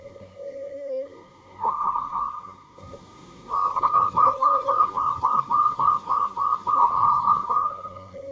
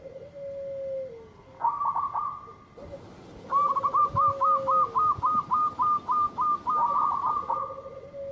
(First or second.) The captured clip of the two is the second